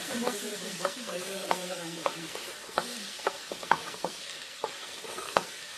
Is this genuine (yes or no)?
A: no